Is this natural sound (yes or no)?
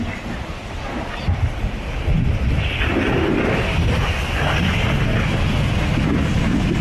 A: yes